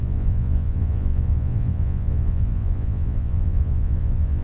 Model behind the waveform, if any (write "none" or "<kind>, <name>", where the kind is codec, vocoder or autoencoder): vocoder, Vocos